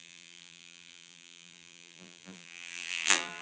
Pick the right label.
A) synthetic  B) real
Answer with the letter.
A